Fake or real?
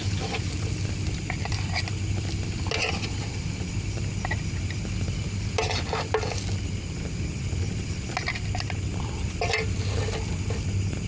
real